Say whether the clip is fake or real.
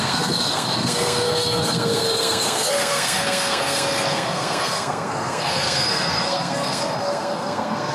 fake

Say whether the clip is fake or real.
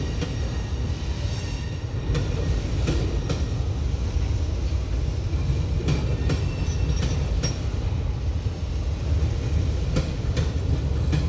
real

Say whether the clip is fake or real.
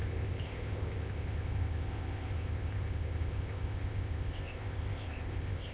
fake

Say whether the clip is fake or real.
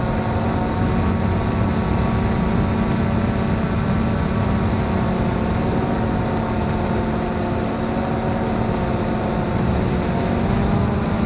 real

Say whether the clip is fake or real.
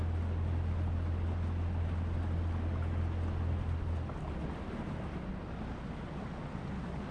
real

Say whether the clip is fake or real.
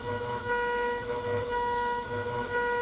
fake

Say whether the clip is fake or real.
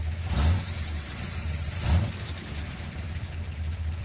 fake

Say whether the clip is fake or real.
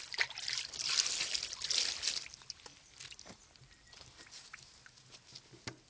real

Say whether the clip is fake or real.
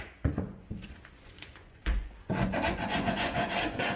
fake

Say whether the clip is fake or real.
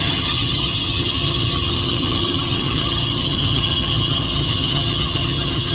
fake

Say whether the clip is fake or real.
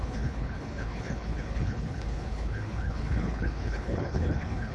fake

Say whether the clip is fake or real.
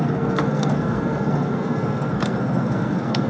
fake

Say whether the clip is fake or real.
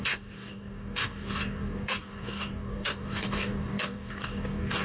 fake